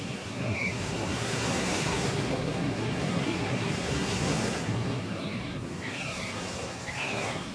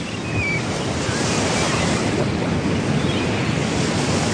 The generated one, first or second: first